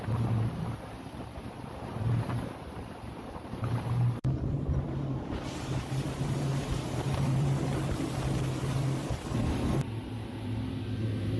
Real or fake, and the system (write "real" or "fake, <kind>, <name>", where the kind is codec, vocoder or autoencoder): fake, vocoder, BigVGAN v2